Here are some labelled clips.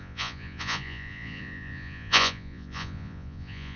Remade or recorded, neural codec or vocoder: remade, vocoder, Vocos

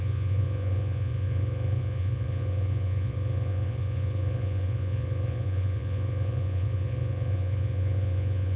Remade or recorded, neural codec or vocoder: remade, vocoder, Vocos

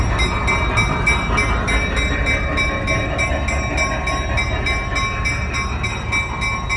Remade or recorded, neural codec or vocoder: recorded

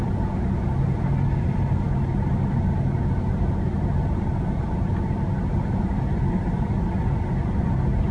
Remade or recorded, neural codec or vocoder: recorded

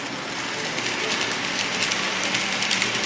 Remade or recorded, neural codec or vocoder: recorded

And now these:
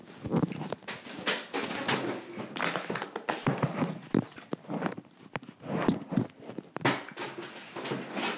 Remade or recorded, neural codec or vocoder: recorded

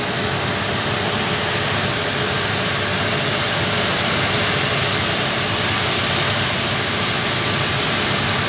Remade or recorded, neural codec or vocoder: recorded